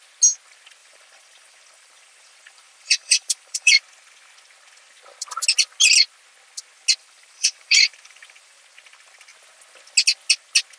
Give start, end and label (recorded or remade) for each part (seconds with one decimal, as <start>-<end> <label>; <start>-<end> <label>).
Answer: 0.0-0.8 recorded; 0.8-3.8 remade; 3.8-7.0 recorded; 7.0-8.6 remade; 8.6-10.8 recorded